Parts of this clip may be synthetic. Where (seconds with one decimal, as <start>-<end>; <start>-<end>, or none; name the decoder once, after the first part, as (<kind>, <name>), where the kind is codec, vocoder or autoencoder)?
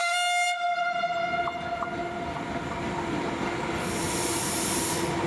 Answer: none